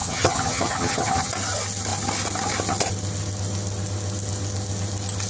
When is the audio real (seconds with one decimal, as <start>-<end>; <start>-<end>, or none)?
1.3-5.3